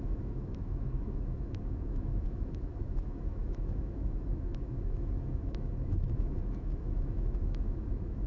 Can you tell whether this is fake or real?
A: fake